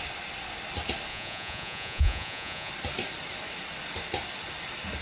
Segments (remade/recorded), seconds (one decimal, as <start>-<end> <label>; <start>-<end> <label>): 0.0-1.1 recorded; 1.1-2.7 remade; 2.7-5.0 recorded